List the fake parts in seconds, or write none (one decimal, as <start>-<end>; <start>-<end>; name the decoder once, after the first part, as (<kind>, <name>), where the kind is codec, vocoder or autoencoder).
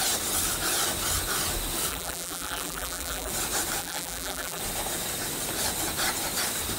1.9-3.3 (vocoder, BigVGAN v2); 3.8-4.6